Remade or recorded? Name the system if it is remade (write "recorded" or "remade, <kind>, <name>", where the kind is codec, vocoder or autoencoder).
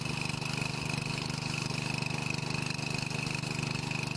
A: recorded